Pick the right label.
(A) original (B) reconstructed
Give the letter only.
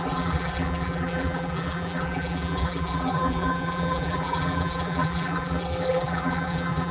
B